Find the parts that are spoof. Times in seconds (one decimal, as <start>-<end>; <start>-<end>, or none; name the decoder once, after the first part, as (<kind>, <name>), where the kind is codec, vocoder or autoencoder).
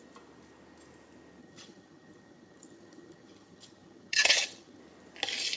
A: 1.4-4.8 (vocoder, HiFi-GAN)